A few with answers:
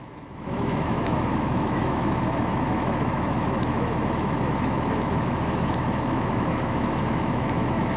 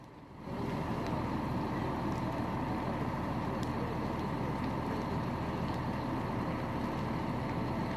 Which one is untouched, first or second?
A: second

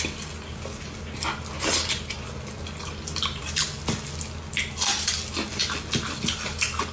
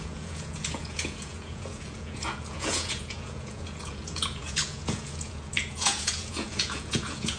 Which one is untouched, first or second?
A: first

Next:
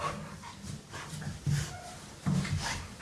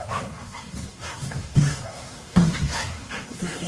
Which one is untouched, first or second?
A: first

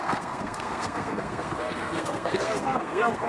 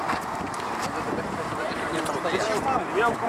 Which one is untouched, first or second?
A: second